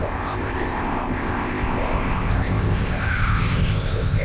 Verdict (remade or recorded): remade